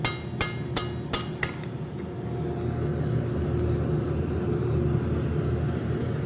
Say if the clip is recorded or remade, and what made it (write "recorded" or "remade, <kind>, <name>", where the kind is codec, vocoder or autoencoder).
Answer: recorded